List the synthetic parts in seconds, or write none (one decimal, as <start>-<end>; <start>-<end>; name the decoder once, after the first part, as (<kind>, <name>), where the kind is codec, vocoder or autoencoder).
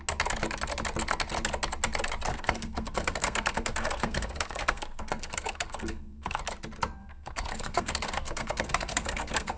2.3-6.4 (codec, SNAC); 7.0-9.6